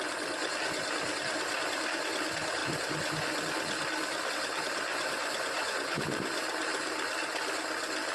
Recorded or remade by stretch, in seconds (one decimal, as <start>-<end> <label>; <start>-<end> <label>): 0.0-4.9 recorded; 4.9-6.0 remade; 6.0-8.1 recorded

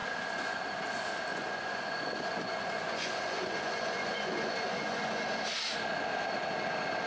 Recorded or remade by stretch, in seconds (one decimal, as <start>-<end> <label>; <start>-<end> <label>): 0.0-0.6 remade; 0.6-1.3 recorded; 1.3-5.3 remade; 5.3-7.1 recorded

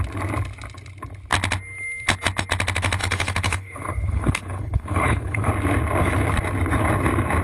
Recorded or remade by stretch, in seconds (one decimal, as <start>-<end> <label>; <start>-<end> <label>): 0.0-3.0 recorded; 3.0-5.5 remade; 5.5-7.4 recorded